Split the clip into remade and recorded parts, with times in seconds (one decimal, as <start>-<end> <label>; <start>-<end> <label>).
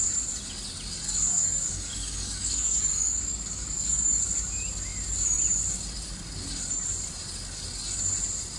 0.0-1.3 recorded; 1.3-4.2 remade; 4.2-8.6 recorded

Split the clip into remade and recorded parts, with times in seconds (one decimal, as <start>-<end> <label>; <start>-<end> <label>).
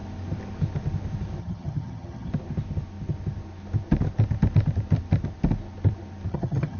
0.0-1.4 recorded; 1.4-2.3 remade; 2.3-6.3 recorded; 6.3-6.8 remade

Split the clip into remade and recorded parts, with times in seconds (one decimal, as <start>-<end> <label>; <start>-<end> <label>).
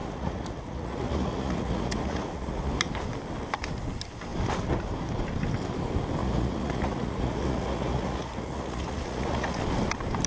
0.0-2.7 remade; 2.7-6.2 recorded; 6.2-9.6 remade; 9.6-10.3 recorded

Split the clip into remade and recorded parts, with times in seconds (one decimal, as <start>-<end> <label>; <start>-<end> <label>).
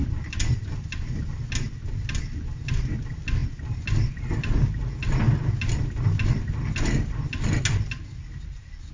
0.0-8.9 recorded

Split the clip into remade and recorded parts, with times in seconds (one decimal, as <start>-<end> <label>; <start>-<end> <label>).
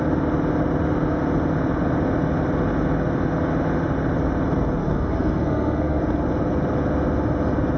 0.0-4.8 recorded; 4.8-6.0 remade; 6.0-7.8 recorded